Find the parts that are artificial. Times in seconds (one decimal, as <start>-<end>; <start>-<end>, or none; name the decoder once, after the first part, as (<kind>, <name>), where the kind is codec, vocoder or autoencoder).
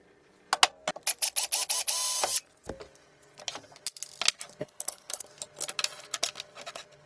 4.6-5.2 (codec, HILCodec)